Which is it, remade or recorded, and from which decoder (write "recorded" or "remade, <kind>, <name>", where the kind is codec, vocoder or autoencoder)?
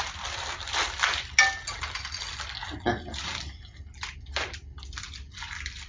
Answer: recorded